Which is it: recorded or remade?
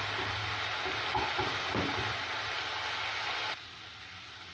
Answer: recorded